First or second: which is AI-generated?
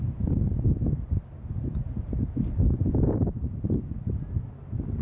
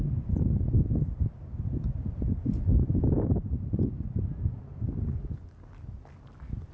second